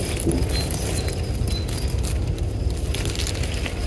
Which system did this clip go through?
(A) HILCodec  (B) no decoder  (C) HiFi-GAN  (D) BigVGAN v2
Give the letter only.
B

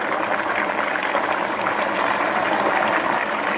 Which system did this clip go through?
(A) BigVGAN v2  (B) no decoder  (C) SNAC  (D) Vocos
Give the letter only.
B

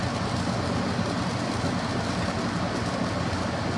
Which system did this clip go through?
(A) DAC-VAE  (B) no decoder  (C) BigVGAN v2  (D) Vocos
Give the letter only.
B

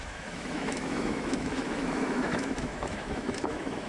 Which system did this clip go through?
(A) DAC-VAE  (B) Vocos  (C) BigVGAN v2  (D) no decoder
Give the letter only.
A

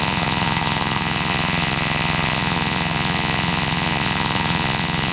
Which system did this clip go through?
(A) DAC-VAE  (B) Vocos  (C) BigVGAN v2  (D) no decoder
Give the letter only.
B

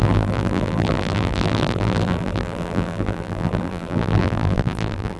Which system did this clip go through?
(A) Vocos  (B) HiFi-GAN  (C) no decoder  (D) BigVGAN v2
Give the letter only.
D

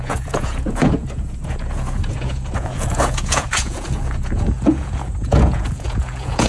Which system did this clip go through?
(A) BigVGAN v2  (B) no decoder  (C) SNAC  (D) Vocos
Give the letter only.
D